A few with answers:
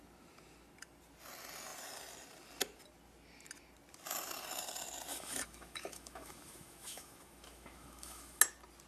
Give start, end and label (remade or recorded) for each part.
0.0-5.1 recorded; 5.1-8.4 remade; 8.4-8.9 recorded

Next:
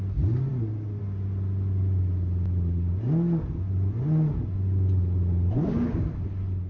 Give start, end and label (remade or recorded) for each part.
0.0-6.7 recorded

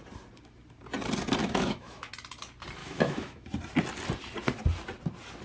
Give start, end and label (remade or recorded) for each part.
0.0-1.4 recorded; 1.4-2.1 remade; 2.1-2.8 recorded; 2.8-3.5 remade; 3.5-5.4 recorded

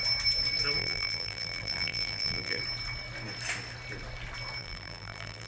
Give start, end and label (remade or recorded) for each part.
0.0-0.8 recorded; 0.8-2.6 remade; 2.6-4.6 recorded; 4.6-5.5 remade

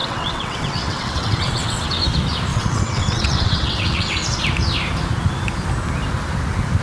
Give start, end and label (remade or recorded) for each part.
0.0-2.0 remade; 2.0-2.5 recorded; 2.5-4.4 remade; 4.4-6.8 recorded

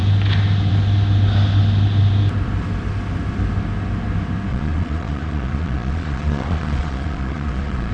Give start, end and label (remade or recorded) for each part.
0.0-4.5 recorded; 4.5-7.9 remade